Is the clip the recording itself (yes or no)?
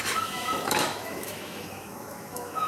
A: no